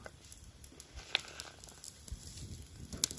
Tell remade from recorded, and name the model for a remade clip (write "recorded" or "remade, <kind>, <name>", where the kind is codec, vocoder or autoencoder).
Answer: recorded